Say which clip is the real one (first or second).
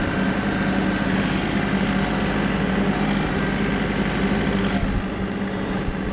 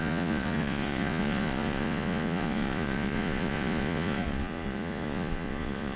first